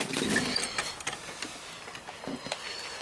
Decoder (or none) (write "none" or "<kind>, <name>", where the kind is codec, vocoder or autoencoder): none